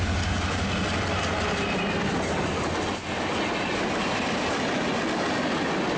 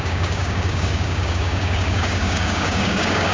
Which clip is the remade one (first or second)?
second